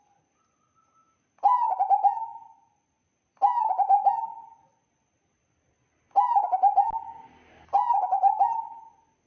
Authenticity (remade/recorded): recorded